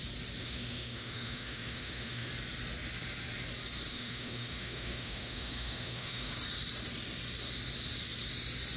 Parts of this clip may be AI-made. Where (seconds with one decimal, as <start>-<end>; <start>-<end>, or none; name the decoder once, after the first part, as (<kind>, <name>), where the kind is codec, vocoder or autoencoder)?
0.4-2.3 (autoencoder, DAC-VAE); 3.9-6.3